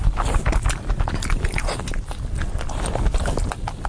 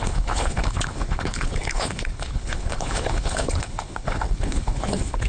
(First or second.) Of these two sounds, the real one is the first